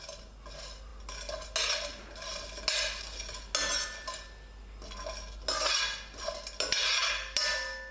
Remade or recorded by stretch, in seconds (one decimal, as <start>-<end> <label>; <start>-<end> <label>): 0.0-7.9 recorded

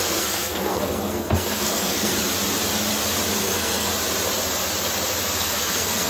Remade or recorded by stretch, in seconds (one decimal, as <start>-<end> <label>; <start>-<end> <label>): 0.0-2.1 remade; 2.1-3.4 recorded; 3.4-3.9 remade; 3.9-5.4 recorded; 5.4-6.1 remade

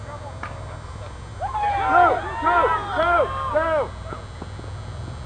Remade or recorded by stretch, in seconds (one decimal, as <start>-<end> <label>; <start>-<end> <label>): 0.0-5.3 recorded

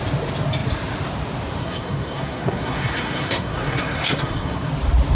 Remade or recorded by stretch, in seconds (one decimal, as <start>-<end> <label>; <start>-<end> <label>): 0.0-1.6 recorded; 1.6-4.7 remade; 4.7-5.2 recorded

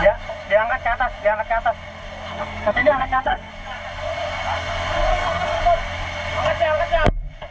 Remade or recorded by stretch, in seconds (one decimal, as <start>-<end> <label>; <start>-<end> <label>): 0.0-2.3 recorded; 2.3-3.5 remade; 3.5-5.1 recorded; 5.1-5.6 remade; 5.6-7.5 recorded

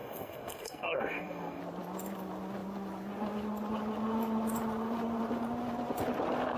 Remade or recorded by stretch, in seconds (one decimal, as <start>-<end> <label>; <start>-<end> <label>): 0.0-1.6 remade; 1.6-6.6 recorded

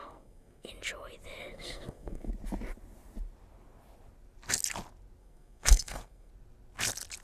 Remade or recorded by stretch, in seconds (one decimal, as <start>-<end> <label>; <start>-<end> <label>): 0.0-0.7 remade; 0.7-1.4 recorded; 1.4-2.3 remade; 2.3-5.2 recorded; 5.2-6.3 remade; 6.3-7.2 recorded

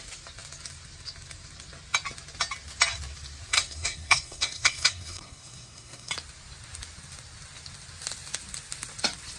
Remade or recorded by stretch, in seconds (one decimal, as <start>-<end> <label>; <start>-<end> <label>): 0.0-3.5 recorded; 3.5-6.1 remade; 6.1-9.4 recorded